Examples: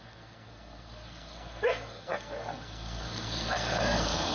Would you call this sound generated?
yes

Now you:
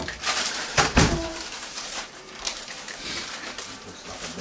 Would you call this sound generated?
yes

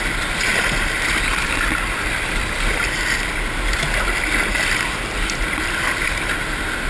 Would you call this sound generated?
no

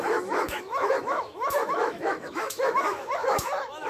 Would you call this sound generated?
yes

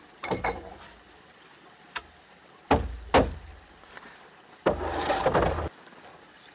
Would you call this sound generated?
no